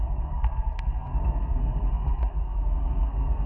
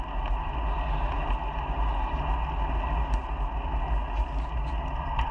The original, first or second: second